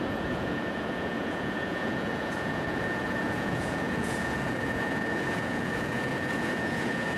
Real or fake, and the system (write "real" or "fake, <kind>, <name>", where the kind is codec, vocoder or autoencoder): fake, vocoder, Vocos